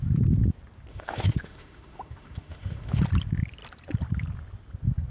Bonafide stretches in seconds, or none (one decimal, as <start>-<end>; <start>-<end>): 0.0-0.9; 3.0-5.1